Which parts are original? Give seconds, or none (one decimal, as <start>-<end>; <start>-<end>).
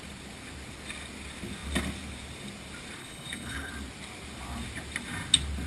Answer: 0.0-3.0; 3.7-5.7